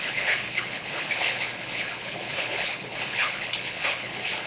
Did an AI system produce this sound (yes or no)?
yes